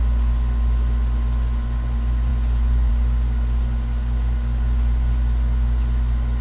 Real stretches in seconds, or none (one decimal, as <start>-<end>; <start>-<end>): 0.0-6.4